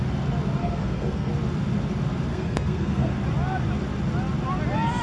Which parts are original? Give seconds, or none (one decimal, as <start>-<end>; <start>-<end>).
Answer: 0.0-0.6; 1.3-2.3; 3.1-5.0